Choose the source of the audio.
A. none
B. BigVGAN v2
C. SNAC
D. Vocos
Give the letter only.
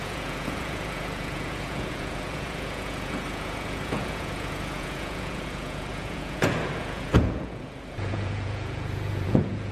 D